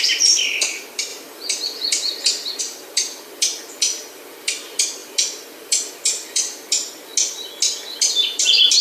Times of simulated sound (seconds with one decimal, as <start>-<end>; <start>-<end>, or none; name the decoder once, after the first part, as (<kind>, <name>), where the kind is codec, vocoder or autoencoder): 0.0-1.1 (vocoder, BigVGAN v2); 2.6-7.1; 8.0-8.8